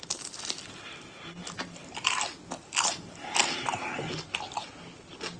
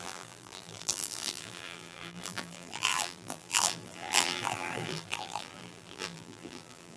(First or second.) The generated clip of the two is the second